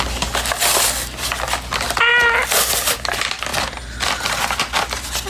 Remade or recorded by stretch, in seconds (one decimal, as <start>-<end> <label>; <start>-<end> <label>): 0.0-5.3 recorded